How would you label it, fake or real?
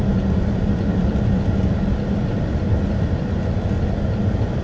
real